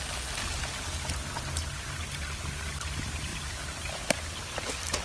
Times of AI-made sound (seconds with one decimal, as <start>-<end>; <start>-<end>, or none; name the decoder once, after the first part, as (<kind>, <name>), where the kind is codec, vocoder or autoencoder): none